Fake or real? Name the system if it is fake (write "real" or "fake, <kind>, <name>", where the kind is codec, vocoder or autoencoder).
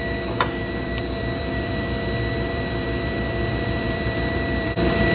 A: fake, vocoder, BigVGAN v2